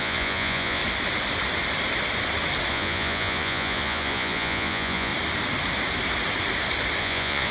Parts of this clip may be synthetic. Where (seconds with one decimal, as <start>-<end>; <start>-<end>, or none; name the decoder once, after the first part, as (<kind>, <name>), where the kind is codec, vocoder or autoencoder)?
0.0-0.8 (vocoder, Vocos); 2.7-5.1; 7.0-7.5